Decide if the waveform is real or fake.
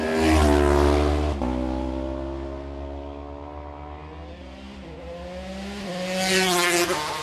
real